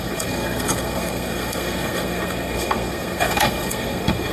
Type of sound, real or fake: fake